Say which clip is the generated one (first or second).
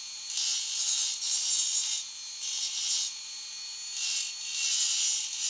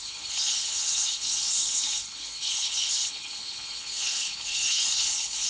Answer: second